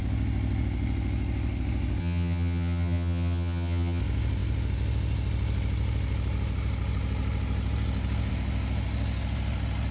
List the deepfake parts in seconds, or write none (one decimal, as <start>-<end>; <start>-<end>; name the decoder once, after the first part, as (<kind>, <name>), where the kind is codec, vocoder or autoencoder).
2.0-4.0 (vocoder, HiFi-GAN)